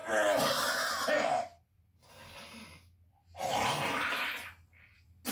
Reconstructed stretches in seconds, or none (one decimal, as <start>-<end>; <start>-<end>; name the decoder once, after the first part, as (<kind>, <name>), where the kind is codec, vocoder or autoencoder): 0.0-0.7 (vocoder, BigVGAN v2)